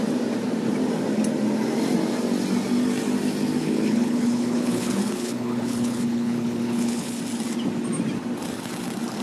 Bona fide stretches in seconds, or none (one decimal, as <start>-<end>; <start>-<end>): 0.0-3.6; 7.2-9.2